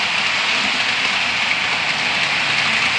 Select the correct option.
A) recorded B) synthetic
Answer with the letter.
A